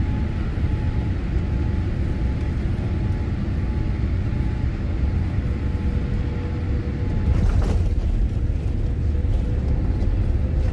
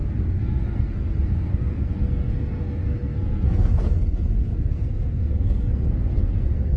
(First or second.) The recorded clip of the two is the first